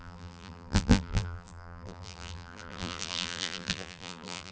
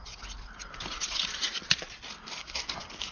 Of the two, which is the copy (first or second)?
first